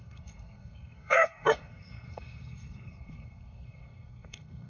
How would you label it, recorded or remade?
remade